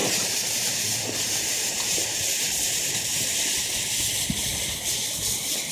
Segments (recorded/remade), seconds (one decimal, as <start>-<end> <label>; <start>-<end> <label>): 0.0-2.9 remade; 2.9-5.7 recorded